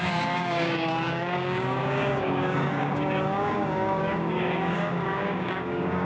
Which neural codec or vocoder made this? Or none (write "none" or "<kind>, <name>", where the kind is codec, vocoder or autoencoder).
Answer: codec, DAC